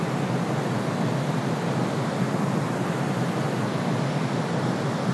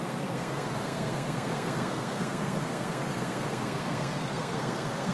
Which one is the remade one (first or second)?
second